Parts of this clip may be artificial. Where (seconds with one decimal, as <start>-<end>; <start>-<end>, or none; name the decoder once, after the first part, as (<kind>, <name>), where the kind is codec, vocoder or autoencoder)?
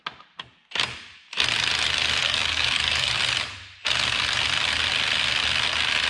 2.2-3.1 (codec, DAC)